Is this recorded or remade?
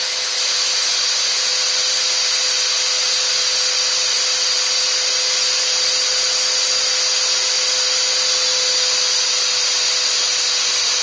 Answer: recorded